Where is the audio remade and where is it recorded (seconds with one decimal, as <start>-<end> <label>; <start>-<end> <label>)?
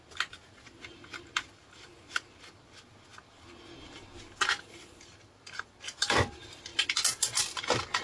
0.0-8.0 recorded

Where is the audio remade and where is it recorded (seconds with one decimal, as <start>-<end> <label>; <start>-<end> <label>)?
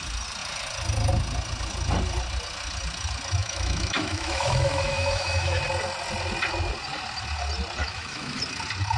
0.0-3.4 recorded; 3.4-5.6 remade; 5.6-7.8 recorded; 7.8-8.4 remade; 8.4-9.0 recorded